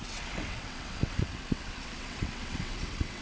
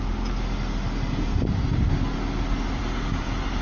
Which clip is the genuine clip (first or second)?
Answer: second